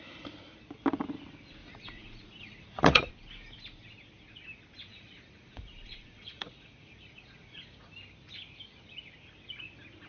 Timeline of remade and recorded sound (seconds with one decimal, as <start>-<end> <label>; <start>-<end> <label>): 0.0-1.6 recorded; 1.6-3.1 remade; 3.1-4.9 recorded; 4.9-7.9 remade; 7.9-10.1 recorded